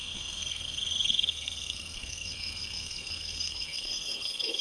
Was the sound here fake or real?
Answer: fake